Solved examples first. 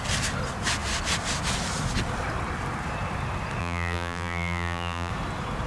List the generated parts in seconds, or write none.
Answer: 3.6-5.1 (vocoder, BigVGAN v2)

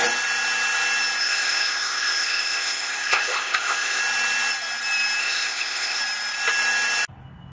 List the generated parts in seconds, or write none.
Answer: 1.2-4.0 (codec, ZipCodec); 5.2-6.0